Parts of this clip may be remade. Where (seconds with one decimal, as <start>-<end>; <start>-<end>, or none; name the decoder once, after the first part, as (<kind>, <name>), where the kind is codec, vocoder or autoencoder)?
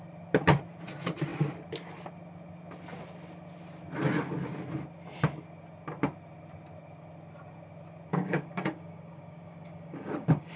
8.1-10.6 (codec, DAC)